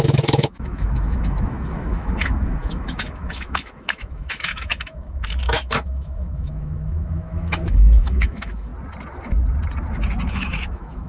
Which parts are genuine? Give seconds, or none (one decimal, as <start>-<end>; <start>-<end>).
8.7-10.3

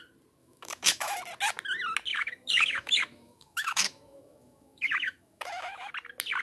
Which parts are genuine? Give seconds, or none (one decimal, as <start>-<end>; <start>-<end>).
0.0-0.4; 1.2-2.1; 5.9-6.4

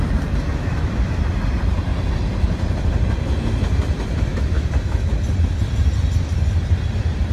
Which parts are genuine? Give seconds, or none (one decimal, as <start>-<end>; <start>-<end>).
0.0-0.5; 1.2-4.3; 5.1-7.3

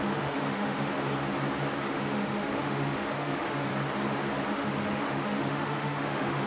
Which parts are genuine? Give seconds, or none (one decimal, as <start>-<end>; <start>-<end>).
0.9-1.9; 3.7-4.5

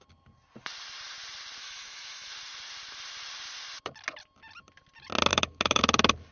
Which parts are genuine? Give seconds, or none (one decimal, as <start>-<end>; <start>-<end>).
0.0-1.6; 2.3-5.3; 5.8-6.3